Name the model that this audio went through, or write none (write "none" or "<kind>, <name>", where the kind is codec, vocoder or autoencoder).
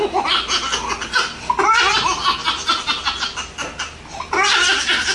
none